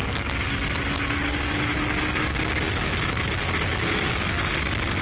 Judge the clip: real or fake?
real